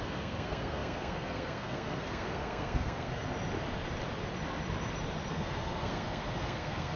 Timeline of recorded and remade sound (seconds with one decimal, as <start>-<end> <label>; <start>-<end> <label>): 0.0-3.2 remade; 3.2-5.3 recorded; 5.3-7.0 remade